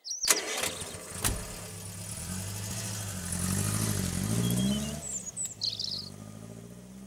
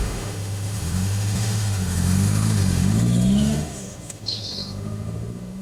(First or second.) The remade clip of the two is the second